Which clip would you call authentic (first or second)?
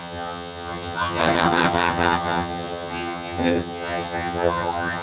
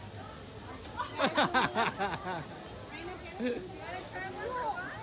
second